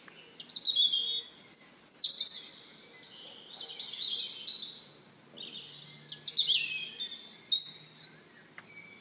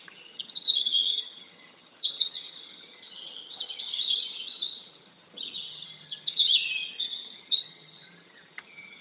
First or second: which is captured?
first